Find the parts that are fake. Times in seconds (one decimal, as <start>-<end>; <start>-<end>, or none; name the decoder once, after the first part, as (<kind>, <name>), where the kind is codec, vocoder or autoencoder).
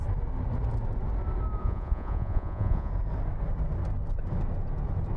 1.6-2.9 (vocoder, Vocos)